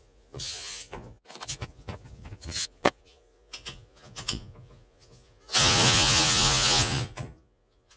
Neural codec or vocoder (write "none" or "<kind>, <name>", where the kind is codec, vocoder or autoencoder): vocoder, Vocos